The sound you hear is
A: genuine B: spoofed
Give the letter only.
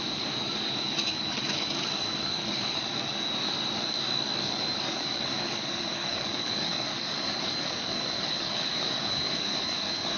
B